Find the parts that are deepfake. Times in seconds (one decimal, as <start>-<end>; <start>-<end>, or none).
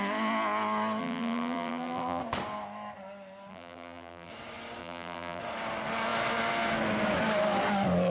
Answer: 1.0-2.2; 3.5-4.3; 4.8-5.4